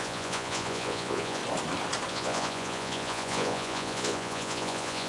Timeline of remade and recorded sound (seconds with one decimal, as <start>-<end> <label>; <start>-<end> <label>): 0.0-1.4 remade; 1.4-2.1 recorded; 2.1-5.1 remade